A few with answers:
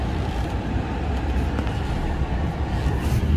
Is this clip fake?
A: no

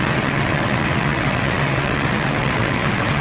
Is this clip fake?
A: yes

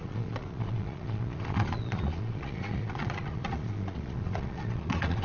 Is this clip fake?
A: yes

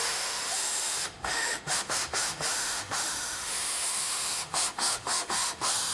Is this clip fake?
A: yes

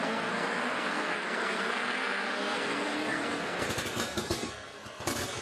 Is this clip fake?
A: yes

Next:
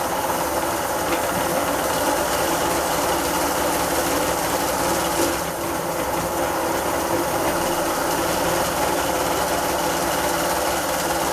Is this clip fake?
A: no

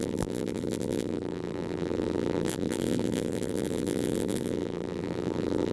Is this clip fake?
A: yes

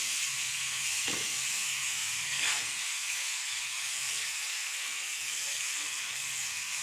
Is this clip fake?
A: yes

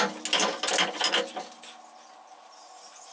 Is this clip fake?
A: no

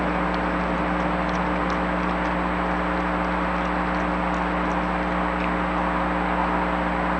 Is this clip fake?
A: no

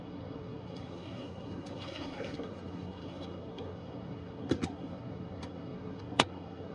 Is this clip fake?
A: yes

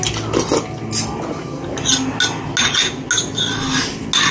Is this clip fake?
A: no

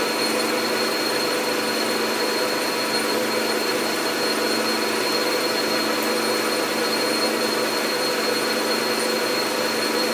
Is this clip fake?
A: no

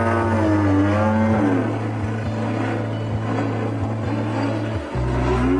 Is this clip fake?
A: no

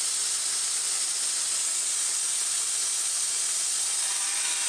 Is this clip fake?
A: no